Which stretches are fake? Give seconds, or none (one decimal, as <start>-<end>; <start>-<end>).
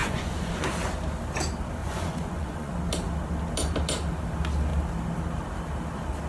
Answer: 0.0-0.7; 1.8-2.7